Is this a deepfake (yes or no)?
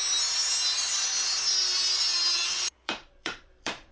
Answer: yes